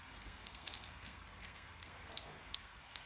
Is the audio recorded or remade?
remade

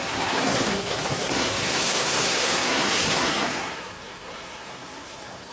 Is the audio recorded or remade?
remade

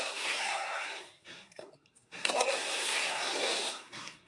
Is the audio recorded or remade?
remade